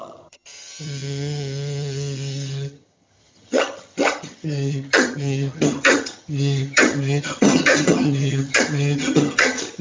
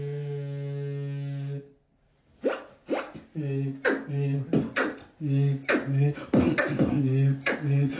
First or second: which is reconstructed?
first